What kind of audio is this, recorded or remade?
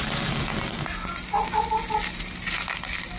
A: recorded